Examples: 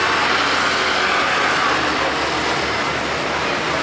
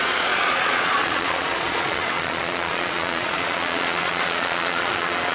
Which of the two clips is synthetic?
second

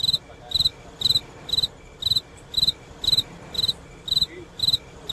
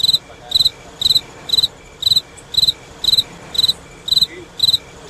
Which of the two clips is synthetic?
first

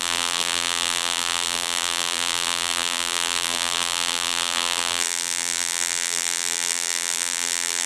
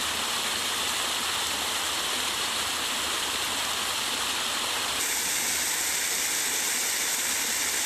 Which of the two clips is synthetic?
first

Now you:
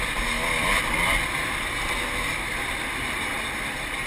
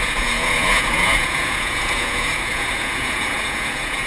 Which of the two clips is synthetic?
second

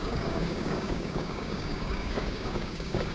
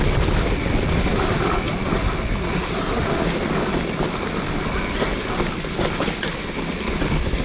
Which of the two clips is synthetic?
first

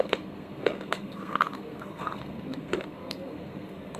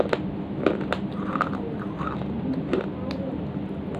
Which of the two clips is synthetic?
first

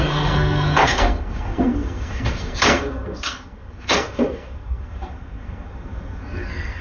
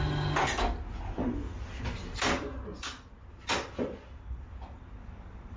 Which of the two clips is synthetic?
first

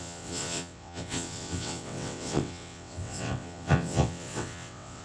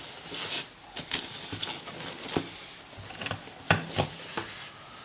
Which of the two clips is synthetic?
first